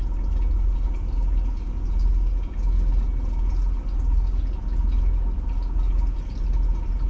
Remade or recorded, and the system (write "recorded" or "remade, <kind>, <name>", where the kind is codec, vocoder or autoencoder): recorded